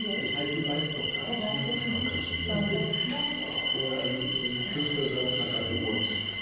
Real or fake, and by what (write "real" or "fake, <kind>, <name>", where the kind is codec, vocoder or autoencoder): real